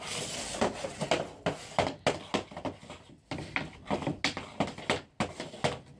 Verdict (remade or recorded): recorded